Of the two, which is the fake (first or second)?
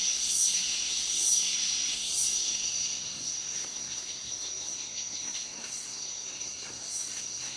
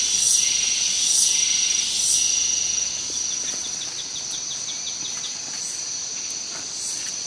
first